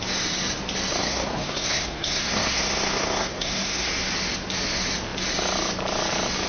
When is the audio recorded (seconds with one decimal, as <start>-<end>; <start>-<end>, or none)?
0.0-1.0; 3.9-6.5